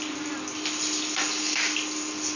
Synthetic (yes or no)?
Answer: no